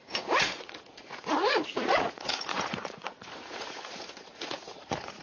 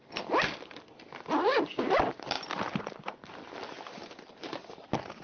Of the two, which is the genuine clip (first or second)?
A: second